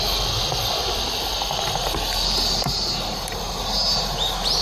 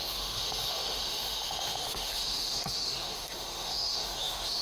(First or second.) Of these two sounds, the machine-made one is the second